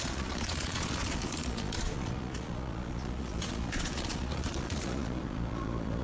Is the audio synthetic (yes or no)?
yes